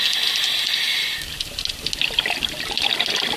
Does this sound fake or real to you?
real